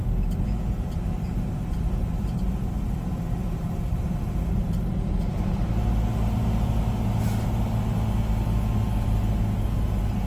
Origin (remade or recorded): recorded